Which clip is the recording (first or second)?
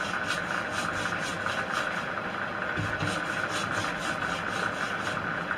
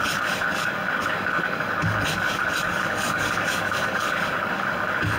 first